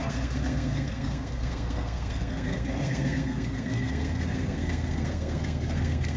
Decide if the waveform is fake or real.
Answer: fake